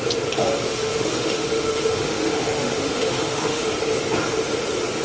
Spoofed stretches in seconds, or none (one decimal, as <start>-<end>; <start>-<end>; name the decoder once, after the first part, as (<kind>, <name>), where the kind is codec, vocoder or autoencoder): 0.7-3.7 (autoencoder, DAC-VAE)